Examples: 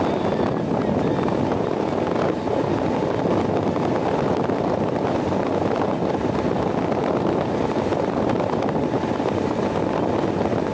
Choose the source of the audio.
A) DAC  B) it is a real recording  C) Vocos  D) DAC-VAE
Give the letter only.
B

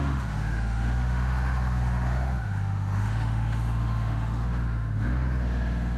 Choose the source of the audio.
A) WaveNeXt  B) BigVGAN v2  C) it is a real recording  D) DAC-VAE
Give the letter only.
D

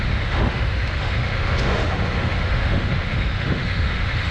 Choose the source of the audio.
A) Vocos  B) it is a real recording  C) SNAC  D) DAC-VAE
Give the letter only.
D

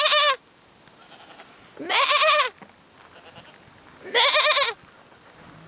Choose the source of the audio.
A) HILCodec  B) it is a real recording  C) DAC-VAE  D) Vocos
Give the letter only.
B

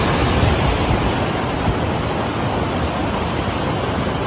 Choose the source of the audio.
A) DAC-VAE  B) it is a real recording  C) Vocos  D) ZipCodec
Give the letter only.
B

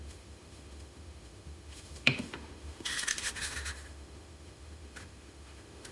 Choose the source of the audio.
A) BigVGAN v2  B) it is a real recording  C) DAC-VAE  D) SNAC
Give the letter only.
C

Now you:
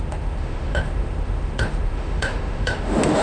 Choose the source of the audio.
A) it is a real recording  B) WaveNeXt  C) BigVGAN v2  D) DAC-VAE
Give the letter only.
D